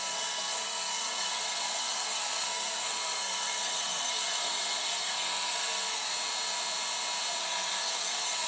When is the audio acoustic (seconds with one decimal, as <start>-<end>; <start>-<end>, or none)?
6.1-7.4